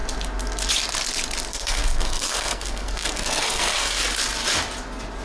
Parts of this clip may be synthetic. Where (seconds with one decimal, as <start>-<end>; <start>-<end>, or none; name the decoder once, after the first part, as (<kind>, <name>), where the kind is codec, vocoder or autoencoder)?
1.5-4.0 (codec, SNAC)

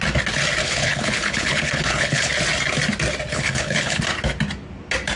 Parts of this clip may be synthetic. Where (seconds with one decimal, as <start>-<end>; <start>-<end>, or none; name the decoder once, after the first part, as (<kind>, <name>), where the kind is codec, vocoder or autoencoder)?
0.6-2.3 (codec, HILCodec); 3.3-4.0

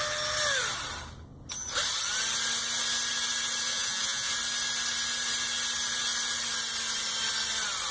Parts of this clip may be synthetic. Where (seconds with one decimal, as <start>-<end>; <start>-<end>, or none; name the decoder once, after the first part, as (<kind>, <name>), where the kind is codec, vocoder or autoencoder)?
3.7-4.3 (vocoder, Vocos)